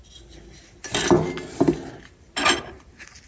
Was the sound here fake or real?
real